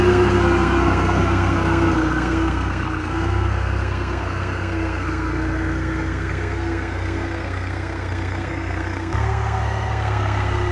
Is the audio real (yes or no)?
no